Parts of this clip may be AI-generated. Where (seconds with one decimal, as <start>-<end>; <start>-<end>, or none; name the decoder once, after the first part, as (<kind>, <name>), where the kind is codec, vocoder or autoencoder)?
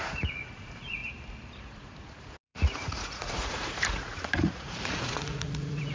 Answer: 0.0-1.0 (vocoder, Vocos); 1.6-5.9